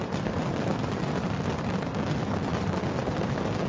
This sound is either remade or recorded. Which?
recorded